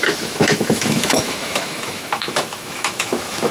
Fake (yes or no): yes